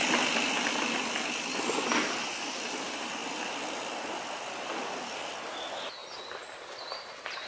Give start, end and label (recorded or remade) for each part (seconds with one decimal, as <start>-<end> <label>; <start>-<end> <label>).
0.0-7.5 recorded